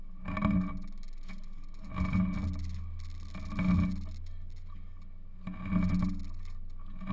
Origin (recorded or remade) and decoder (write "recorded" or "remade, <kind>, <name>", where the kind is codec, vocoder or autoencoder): recorded